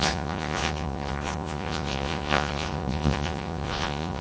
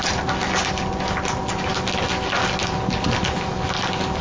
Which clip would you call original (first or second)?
second